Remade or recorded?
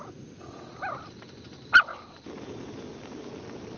recorded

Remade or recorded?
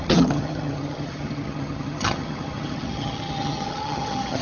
remade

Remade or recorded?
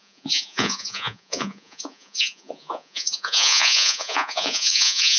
remade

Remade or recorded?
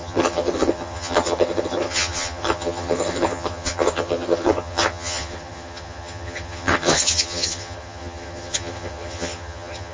remade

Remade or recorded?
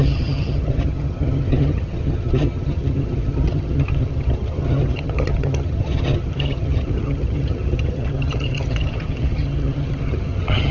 remade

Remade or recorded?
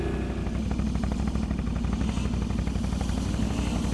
recorded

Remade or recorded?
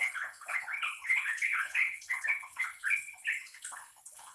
remade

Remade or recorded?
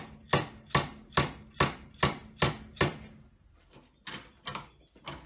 recorded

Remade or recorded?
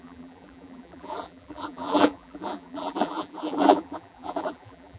remade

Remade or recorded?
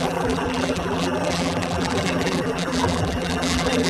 remade